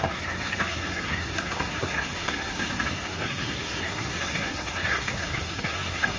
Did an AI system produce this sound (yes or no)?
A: yes